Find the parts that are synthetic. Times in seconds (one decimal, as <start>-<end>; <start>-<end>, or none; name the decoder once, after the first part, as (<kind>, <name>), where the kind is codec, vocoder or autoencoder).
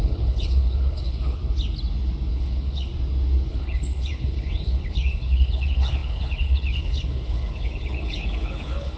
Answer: 0.0-1.4 (codec, HILCodec); 2.3-2.9; 3.5-9.0